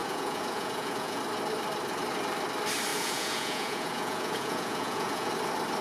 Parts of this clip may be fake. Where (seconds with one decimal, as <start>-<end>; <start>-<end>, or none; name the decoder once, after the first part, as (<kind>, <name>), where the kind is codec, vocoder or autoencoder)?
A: 0.0-1.2 (vocoder, Vocos); 2.9-5.3